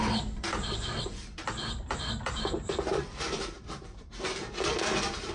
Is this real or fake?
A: fake